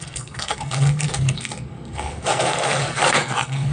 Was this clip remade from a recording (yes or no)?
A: yes